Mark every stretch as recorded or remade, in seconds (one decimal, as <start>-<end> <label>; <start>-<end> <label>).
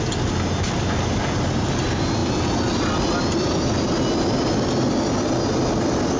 0.0-6.2 recorded